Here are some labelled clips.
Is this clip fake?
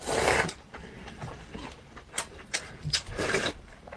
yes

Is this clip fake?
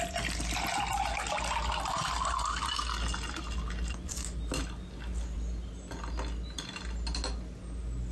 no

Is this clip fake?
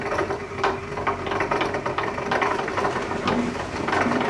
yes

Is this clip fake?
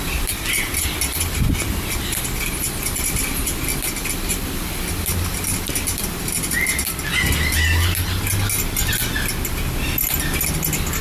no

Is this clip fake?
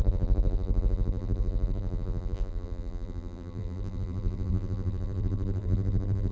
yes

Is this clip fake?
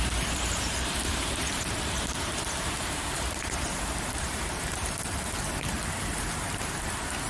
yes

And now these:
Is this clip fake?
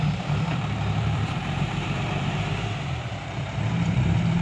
yes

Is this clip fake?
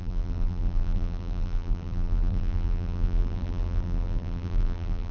yes